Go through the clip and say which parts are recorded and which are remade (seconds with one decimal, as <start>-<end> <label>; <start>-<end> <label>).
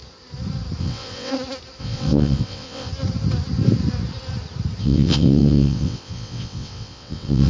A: 0.0-0.8 recorded; 0.8-1.3 remade; 1.3-1.8 recorded; 1.8-2.9 remade; 2.9-4.8 recorded; 4.8-7.5 remade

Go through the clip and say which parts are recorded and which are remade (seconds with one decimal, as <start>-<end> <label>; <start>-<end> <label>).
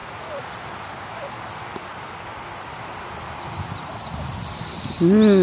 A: 0.0-5.4 recorded